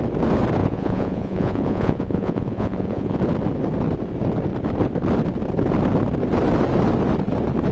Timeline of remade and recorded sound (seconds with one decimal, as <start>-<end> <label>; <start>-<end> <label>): 0.0-0.6 recorded; 0.6-3.2 remade; 3.2-7.7 recorded